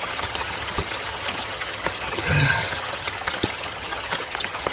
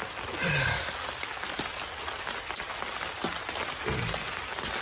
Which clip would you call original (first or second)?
second